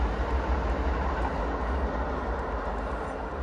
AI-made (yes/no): no